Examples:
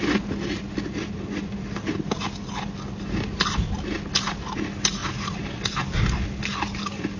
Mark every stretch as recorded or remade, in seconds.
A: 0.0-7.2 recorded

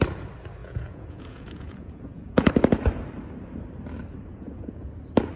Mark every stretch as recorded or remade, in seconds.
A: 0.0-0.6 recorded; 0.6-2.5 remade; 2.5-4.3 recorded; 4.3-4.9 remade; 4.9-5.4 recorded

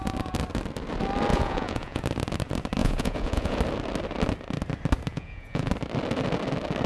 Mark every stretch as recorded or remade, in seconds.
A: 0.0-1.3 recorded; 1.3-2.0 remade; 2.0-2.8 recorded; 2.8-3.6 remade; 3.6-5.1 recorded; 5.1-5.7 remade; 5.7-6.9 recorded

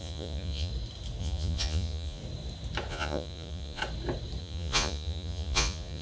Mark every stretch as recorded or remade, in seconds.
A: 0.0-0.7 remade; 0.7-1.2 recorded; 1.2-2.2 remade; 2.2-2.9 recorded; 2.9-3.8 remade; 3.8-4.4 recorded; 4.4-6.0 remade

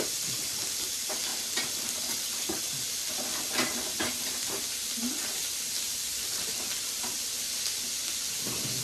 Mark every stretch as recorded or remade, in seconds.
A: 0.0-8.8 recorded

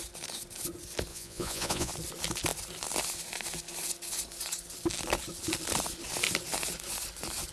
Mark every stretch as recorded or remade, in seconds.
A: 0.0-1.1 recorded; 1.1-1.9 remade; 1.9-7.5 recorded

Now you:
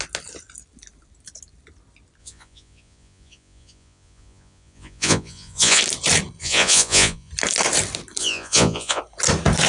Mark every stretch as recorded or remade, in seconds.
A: 0.0-2.2 recorded; 2.2-5.8 remade; 5.8-6.4 recorded; 6.4-7.3 remade; 7.3-8.2 recorded; 8.2-9.0 remade; 9.0-9.7 recorded